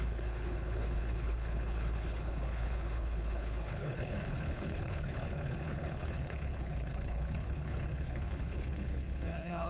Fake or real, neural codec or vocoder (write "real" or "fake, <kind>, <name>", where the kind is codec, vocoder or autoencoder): fake, codec, HILCodec